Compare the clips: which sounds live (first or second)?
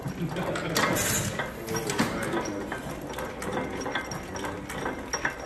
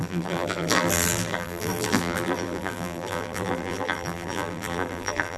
first